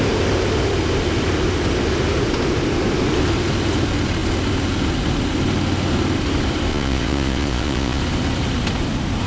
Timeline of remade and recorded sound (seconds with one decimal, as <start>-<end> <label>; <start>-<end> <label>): 0.0-6.7 recorded; 6.7-8.0 remade; 8.0-9.3 recorded